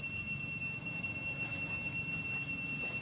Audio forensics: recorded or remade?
recorded